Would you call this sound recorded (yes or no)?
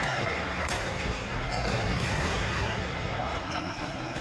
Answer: no